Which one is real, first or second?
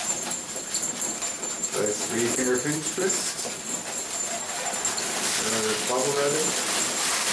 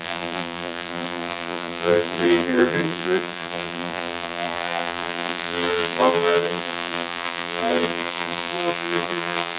first